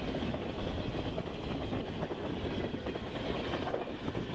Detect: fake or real real